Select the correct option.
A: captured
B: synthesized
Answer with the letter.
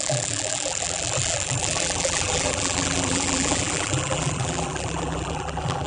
B